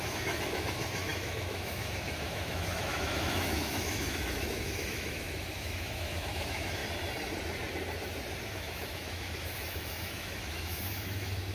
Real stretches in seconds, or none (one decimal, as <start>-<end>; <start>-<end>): 6.8-8.5